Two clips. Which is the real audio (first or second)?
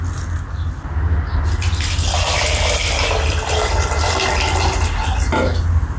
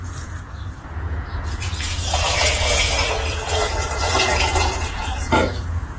first